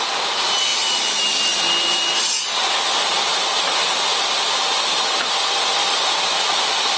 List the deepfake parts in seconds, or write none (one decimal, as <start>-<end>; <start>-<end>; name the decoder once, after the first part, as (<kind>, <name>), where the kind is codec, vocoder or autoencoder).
4.1-4.8 (vocoder, BigVGAN v2); 5.8-6.6